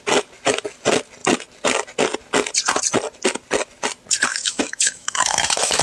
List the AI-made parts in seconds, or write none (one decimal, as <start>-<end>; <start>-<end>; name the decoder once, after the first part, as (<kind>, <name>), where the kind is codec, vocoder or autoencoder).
4.3-5.8 (autoencoder, DAC-VAE)